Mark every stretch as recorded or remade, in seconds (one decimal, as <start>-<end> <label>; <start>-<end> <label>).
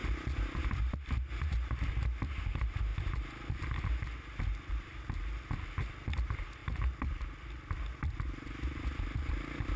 0.0-6.6 recorded; 6.6-7.7 remade; 7.7-9.8 recorded